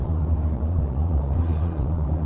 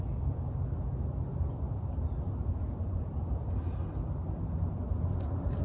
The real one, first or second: second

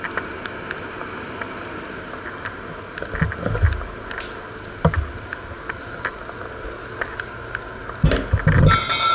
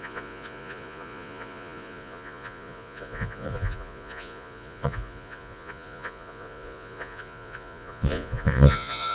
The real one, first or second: first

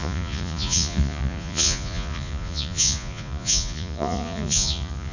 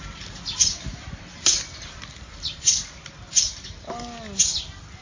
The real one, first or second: second